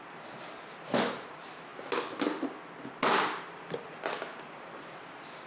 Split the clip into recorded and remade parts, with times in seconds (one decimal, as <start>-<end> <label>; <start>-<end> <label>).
0.0-5.5 recorded